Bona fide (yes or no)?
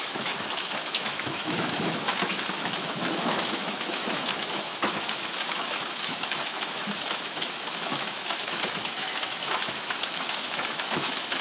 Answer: no